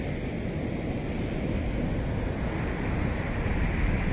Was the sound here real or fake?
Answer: real